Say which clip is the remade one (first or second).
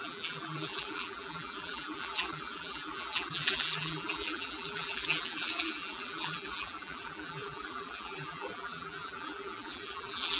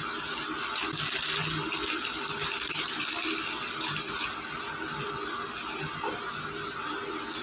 first